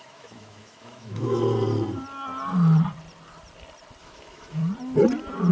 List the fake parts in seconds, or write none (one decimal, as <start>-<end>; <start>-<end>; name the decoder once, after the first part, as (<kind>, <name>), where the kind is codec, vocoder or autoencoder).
0.0-1.4 (autoencoder, DAC-VAE); 4.0-4.6